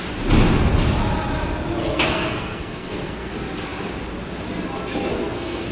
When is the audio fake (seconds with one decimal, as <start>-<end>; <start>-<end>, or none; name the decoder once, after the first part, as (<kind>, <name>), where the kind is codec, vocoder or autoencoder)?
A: 1.8-3.3 (codec, SNAC); 5.1-5.7